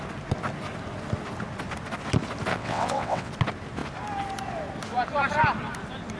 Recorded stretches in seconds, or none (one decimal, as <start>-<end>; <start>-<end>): 0.0-2.5; 3.3-6.2